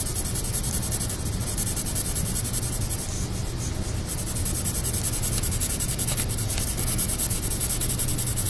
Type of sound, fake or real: real